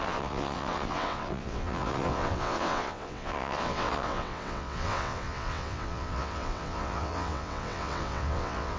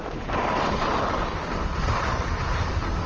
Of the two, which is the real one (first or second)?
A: second